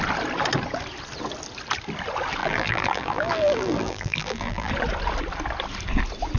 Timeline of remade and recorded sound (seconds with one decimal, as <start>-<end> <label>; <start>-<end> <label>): 0.0-2.4 recorded; 2.4-4.7 remade; 4.7-6.4 recorded